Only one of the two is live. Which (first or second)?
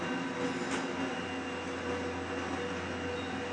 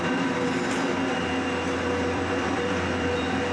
first